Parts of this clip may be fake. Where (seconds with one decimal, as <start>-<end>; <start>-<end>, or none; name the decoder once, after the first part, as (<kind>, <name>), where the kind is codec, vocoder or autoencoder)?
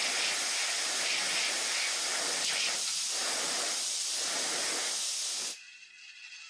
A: none